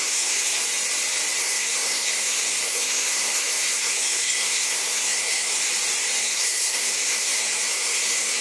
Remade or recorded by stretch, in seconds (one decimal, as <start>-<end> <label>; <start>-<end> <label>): 0.0-0.6 remade; 0.6-1.4 recorded; 1.4-5.7 remade; 5.7-6.2 recorded; 6.2-8.4 remade